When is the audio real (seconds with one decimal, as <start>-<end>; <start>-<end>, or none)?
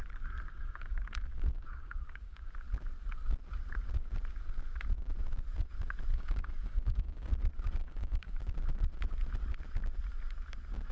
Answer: 0.0-0.5; 2.5-6.1; 7.3-7.8; 8.4-10.9